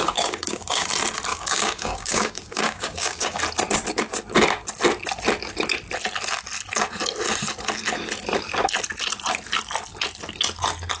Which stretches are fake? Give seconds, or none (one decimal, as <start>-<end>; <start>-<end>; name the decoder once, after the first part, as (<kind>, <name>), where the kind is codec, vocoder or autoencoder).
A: 0.0-0.9 (codec, DAC); 1.3-3.4